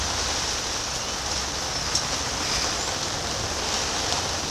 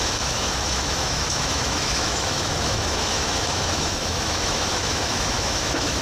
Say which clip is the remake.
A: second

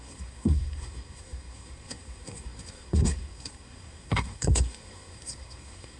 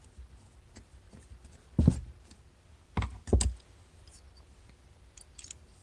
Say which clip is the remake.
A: first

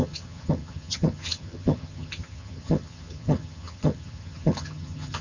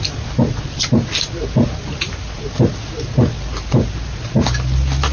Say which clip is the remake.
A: first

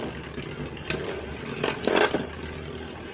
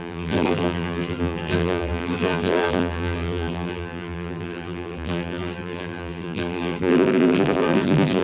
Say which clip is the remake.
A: second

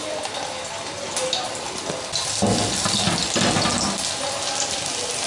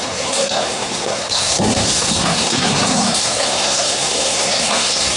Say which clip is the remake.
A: second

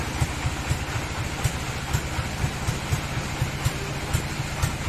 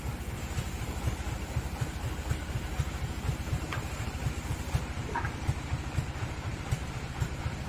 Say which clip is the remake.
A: second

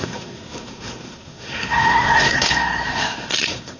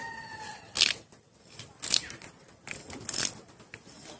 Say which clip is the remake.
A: first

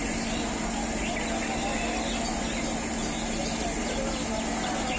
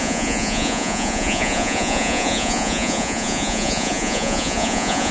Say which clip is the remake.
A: second